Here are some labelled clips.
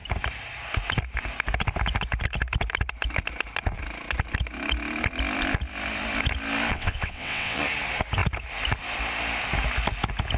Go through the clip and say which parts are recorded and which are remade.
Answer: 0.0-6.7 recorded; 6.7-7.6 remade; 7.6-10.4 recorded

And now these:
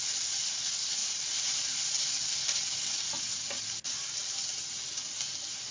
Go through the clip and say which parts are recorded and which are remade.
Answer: 0.0-5.7 recorded

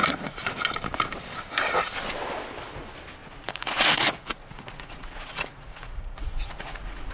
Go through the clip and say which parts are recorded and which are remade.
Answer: 0.0-0.6 remade; 0.6-3.2 recorded; 3.2-7.1 remade

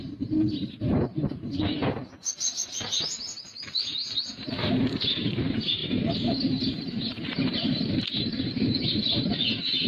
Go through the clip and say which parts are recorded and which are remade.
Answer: 0.0-1.8 remade; 1.8-4.6 recorded; 4.6-9.9 remade